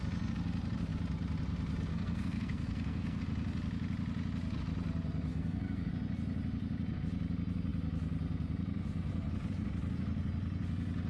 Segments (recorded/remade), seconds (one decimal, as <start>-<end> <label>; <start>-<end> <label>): 0.0-1.9 recorded; 1.9-3.2 remade; 3.2-5.3 recorded; 5.3-5.9 remade; 5.9-11.1 recorded